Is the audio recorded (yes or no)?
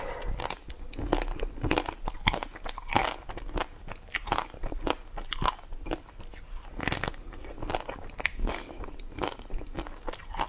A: yes